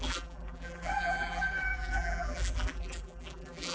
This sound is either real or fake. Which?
fake